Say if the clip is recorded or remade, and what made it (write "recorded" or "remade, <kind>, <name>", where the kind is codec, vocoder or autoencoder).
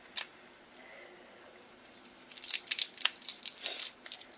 recorded